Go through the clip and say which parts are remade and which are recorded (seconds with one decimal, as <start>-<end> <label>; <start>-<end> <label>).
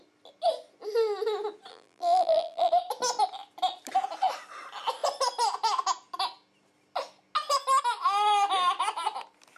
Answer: 0.0-1.7 recorded; 1.7-2.7 remade; 2.7-9.6 recorded